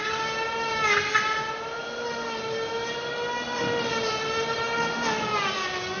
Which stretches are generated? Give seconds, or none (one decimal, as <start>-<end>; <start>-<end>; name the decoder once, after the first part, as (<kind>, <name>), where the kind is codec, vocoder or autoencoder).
none